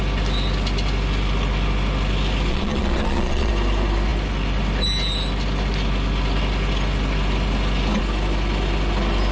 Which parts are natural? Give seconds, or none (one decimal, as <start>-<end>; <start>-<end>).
0.0-2.5; 3.5-9.3